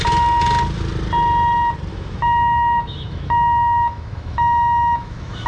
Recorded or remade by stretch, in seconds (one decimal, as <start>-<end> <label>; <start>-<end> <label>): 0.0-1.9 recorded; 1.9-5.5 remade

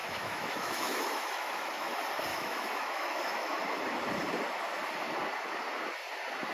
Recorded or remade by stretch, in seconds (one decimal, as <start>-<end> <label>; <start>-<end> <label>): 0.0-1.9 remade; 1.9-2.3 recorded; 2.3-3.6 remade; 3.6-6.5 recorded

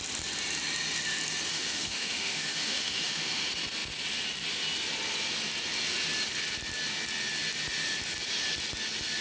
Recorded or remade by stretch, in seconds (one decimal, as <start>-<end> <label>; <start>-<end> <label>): 0.0-1.5 recorded; 1.5-3.4 remade; 3.4-9.2 recorded